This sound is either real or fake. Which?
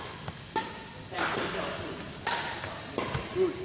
real